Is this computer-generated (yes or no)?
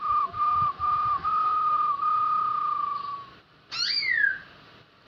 no